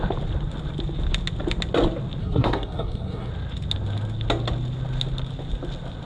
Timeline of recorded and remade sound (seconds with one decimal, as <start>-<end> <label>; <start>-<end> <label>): 0.0-2.2 recorded; 2.2-3.3 remade; 3.3-6.0 recorded